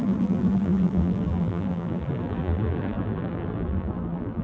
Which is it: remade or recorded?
remade